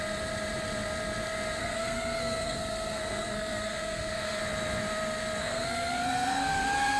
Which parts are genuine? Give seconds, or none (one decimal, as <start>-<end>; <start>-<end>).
0.0-1.6; 4.4-5.4